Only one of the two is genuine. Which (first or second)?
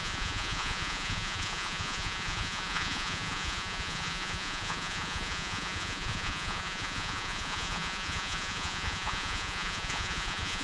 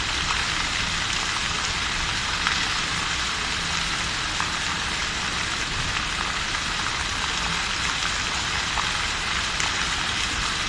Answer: second